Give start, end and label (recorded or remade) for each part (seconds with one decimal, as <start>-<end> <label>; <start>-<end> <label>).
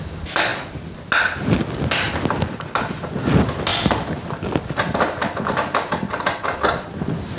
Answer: 0.0-7.4 recorded